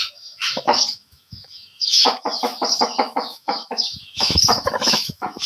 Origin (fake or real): fake